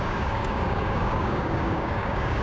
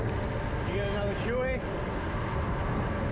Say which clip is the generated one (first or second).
first